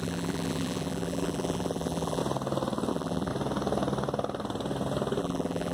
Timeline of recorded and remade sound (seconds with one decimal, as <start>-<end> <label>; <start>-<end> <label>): 0.0-2.2 remade; 2.2-2.9 recorded; 2.9-3.3 remade; 3.3-5.2 recorded; 5.2-5.7 remade